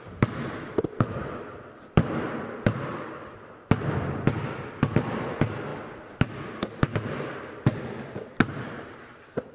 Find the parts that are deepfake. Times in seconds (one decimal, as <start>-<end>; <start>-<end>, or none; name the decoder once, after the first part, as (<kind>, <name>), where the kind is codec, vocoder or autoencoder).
1.2-2.0 (vocoder, BigVGAN v2)